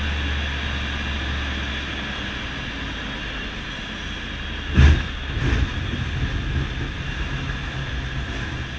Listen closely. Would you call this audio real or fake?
real